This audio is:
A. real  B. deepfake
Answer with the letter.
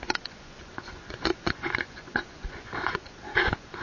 B